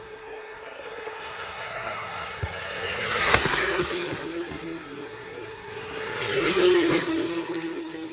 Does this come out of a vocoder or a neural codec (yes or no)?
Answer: yes